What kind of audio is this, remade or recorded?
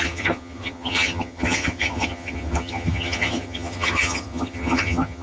remade